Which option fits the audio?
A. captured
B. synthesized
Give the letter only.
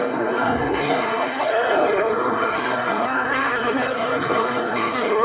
B